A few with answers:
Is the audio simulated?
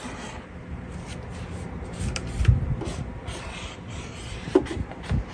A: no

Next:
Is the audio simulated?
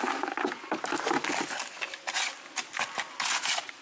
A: no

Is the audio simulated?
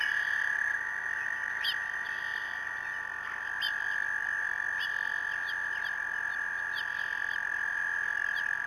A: no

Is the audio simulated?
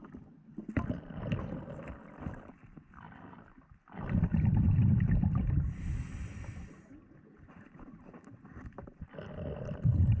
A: no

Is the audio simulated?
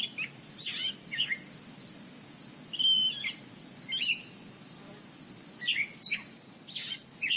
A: no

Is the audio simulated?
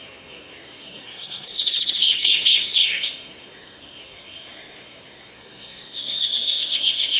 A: yes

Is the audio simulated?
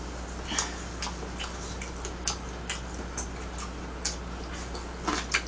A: no